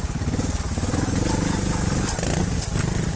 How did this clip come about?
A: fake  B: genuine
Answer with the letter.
B